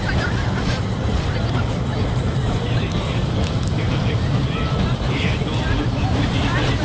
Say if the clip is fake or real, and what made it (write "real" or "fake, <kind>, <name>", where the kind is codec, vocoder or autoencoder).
fake, vocoder, BigVGAN v2